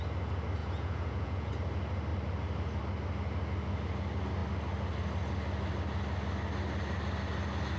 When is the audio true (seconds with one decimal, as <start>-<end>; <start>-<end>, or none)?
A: 0.0-0.6; 1.5-7.8